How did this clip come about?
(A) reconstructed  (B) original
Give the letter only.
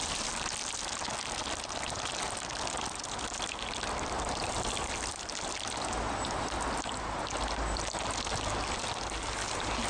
B